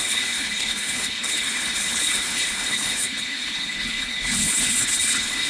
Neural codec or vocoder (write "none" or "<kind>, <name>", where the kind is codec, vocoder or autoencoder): codec, HILCodec